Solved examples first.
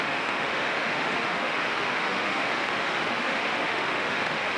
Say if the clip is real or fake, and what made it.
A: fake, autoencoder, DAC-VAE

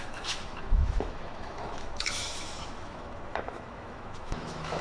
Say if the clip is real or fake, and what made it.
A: fake, autoencoder, DAC-VAE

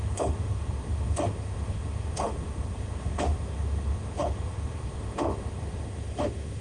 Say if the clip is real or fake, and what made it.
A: fake, autoencoder, DAC-VAE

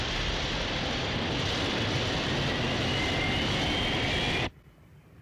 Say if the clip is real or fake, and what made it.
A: real